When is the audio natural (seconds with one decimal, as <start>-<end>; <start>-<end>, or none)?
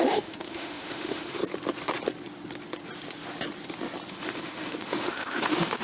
1.4-4.1